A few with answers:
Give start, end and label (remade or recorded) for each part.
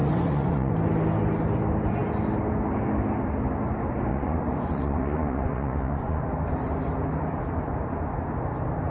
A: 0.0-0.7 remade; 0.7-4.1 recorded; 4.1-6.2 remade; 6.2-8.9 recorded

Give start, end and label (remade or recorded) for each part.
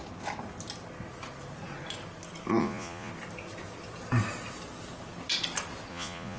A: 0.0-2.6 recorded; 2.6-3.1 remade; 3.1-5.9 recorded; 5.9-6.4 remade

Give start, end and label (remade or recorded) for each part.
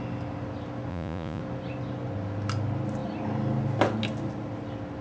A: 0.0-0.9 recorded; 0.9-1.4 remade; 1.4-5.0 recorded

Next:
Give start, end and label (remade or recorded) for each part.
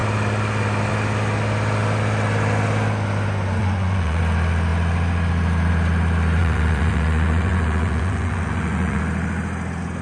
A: 0.0-3.6 recorded; 3.6-4.2 remade; 4.2-6.4 recorded; 6.4-9.0 remade; 9.0-10.0 recorded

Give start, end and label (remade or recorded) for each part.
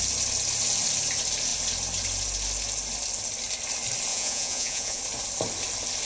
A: 0.0-4.1 recorded; 4.1-5.0 remade; 5.0-6.1 recorded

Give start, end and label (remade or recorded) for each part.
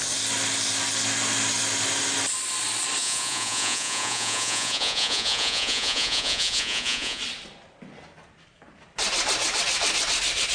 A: 0.0-3.0 recorded; 3.0-7.2 remade; 7.2-10.5 recorded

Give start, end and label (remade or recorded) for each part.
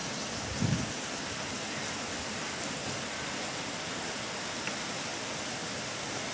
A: 0.0-6.3 recorded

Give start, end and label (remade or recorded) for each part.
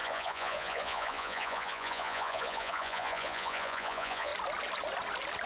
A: 0.0-4.3 remade; 4.3-5.5 recorded